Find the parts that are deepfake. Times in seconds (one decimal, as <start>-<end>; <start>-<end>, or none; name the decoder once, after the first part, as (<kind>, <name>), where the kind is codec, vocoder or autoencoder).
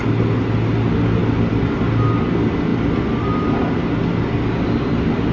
none